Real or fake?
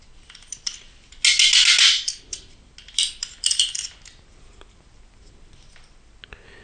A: real